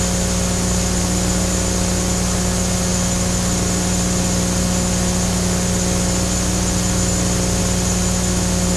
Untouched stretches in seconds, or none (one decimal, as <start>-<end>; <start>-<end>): 0.0-8.8